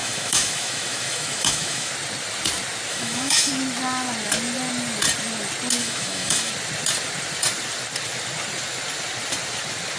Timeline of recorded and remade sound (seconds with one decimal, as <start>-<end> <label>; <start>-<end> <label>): 0.0-1.9 remade; 1.9-2.9 recorded; 2.9-3.5 remade; 3.5-5.8 recorded; 5.8-6.5 remade; 6.5-10.0 recorded